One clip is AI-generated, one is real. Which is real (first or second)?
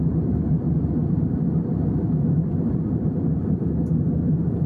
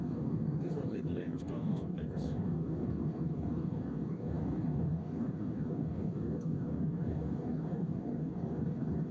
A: first